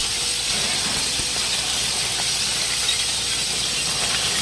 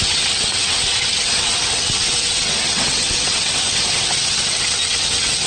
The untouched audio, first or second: first